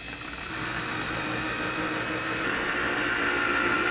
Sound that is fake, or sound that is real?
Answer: real